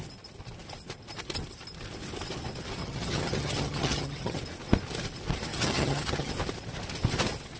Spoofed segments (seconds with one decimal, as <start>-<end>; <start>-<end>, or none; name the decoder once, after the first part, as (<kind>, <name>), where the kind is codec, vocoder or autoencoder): 2.8-4.4 (vocoder, HiFi-GAN); 5.5-6.3